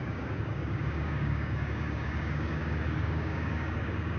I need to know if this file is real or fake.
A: fake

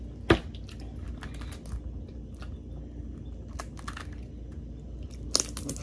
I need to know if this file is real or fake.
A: real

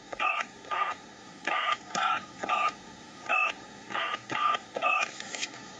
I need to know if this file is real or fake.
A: fake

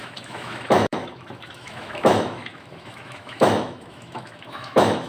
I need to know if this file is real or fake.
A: fake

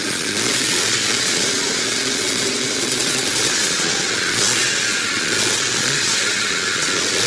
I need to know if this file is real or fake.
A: fake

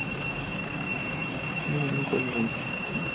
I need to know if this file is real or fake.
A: fake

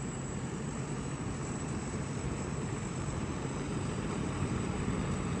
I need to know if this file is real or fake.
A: fake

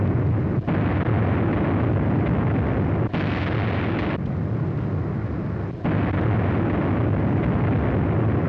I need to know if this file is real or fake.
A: real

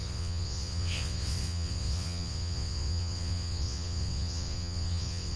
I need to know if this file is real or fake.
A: fake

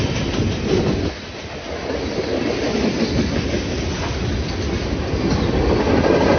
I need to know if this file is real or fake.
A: real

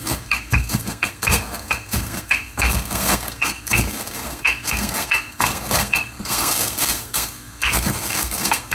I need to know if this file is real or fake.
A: fake